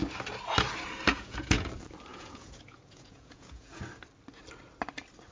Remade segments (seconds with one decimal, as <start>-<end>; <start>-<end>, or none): 1.1-1.7; 2.1-3.8